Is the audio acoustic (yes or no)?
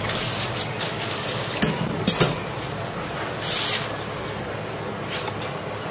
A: yes